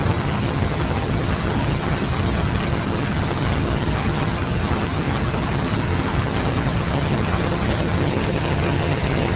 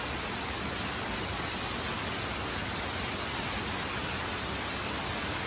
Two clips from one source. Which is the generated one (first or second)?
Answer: first